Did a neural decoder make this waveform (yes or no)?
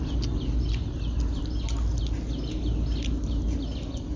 no